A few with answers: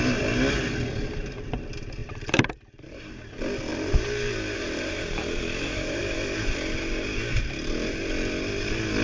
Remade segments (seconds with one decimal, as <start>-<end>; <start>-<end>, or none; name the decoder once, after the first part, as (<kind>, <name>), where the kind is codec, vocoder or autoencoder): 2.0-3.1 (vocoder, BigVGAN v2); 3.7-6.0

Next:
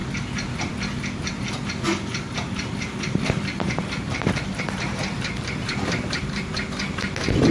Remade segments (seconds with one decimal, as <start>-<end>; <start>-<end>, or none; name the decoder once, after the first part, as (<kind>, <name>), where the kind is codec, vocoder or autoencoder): 2.1-6.4 (vocoder, BigVGAN v2)

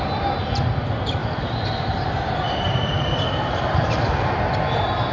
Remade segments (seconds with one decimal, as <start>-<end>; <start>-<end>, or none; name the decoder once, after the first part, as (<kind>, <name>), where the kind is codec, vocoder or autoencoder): 1.2-4.3 (vocoder, BigVGAN v2)

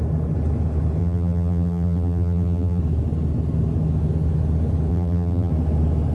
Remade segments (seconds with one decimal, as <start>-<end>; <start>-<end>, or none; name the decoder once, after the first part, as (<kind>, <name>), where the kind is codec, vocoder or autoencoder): 1.0-2.8 (vocoder, BigVGAN v2); 4.9-5.5

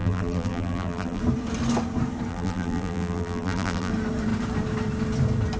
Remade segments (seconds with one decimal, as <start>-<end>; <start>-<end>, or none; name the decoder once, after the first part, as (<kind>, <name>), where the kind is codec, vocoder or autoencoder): 0.0-1.2 (vocoder, BigVGAN v2); 2.3-3.9

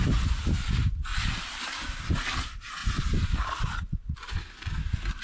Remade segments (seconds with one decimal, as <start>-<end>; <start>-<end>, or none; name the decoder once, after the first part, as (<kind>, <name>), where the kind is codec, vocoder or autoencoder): 1.1-2.0 (vocoder, BigVGAN v2); 2.8-4.3

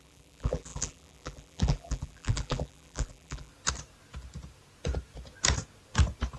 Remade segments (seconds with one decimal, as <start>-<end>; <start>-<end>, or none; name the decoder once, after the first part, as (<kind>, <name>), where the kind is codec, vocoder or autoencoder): 0.0-3.5 (vocoder, BigVGAN v2)

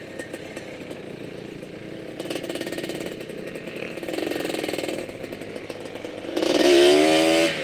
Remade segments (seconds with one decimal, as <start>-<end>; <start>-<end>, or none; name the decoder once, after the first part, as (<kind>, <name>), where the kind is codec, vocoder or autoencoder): none